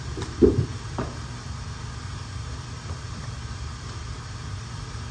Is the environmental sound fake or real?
real